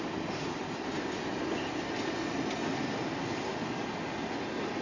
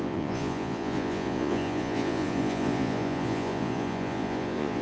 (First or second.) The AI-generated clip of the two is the second